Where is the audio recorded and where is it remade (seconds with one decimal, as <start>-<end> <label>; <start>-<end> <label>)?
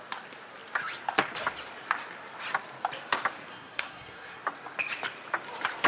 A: 0.0-3.5 recorded; 3.5-4.4 remade; 4.4-5.9 recorded